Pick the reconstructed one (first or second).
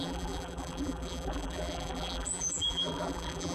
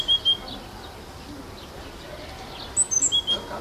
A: first